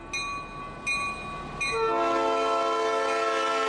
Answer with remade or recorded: recorded